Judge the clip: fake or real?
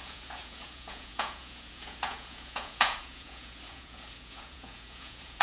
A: fake